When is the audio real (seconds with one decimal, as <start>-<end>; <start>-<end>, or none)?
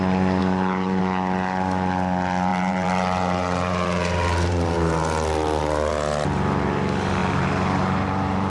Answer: 0.0-0.4; 1.0-2.5; 5.9-7.2